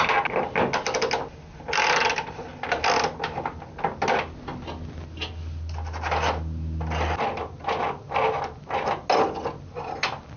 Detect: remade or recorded recorded